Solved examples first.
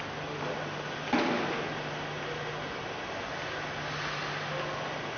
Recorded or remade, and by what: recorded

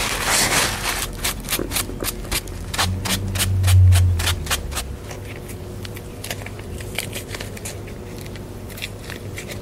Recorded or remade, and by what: recorded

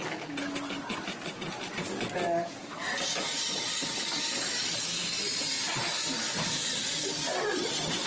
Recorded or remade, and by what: recorded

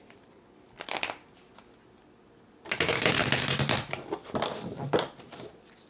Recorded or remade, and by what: recorded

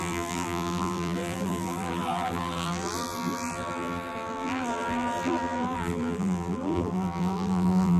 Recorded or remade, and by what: remade, vocoder, BigVGAN v2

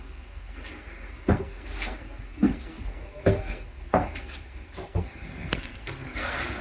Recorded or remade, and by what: remade, codec, SNAC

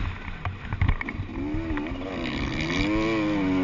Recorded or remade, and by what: recorded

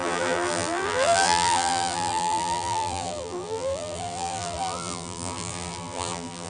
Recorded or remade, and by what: remade, vocoder, BigVGAN v2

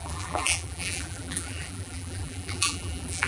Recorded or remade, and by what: remade, vocoder, BigVGAN v2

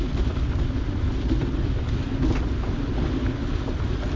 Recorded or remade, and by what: recorded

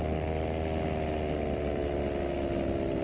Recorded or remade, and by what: recorded